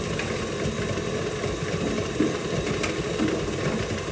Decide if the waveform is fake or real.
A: real